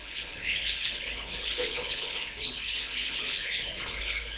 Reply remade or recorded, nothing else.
remade